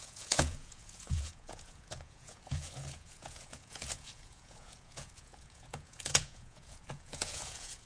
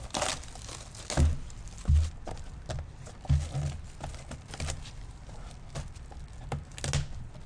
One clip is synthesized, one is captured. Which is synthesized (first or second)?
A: first